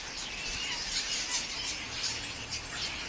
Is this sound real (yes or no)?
yes